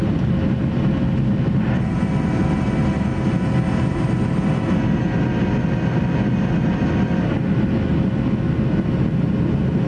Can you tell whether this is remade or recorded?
recorded